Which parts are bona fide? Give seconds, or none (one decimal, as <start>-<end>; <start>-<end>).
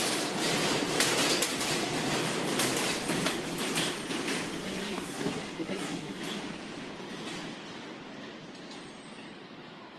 0.0-4.6; 6.2-10.0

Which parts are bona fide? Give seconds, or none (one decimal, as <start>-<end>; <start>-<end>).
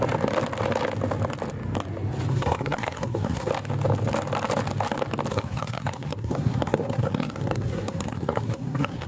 0.0-2.3; 3.5-5.3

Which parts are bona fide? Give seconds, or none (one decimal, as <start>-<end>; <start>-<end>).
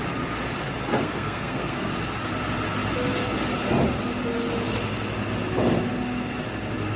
0.0-0.9; 1.9-7.0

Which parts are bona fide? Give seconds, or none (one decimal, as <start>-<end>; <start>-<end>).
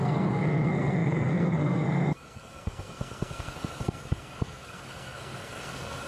none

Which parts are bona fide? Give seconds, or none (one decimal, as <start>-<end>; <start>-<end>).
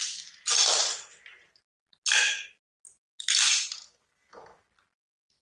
0.0-5.4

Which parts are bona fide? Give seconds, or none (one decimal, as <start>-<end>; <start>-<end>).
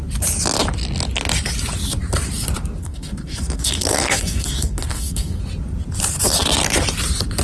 0.0-2.8; 5.4-7.4